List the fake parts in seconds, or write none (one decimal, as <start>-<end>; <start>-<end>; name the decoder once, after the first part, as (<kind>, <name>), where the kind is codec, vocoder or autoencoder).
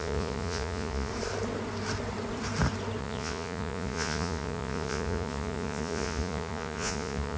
0.0-1.1 (vocoder, Vocos); 3.0-7.4